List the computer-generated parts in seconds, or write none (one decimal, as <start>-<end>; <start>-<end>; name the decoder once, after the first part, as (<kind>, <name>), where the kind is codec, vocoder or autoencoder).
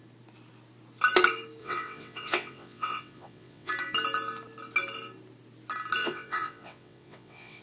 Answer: 1.6-3.7 (vocoder, WaveNeXt); 6.0-7.6